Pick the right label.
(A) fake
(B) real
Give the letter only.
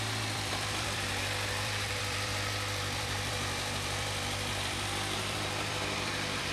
A